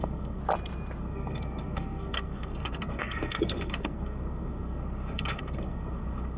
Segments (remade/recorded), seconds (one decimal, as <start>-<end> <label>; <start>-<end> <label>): 0.0-0.4 remade; 0.4-1.0 recorded; 1.0-6.4 remade